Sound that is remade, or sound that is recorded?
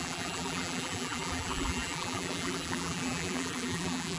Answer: remade